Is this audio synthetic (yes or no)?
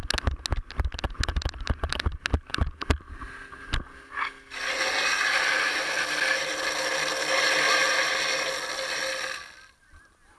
no